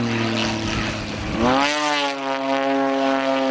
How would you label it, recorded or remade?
recorded